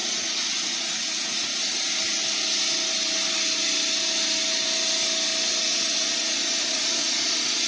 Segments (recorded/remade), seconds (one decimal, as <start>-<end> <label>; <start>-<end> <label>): 0.0-1.5 remade; 1.5-5.6 recorded; 5.6-7.7 remade

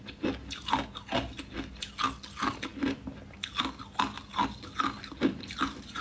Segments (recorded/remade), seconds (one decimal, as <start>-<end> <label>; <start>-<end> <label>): 0.0-6.0 recorded

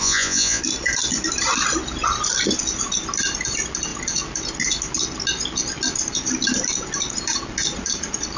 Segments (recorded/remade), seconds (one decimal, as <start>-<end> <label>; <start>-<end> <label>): 0.0-0.6 remade; 0.6-8.4 recorded